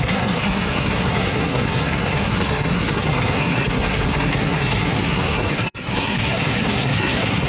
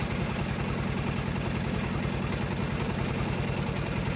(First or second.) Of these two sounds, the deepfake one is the first